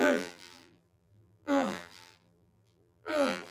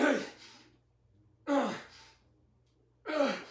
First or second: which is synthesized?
first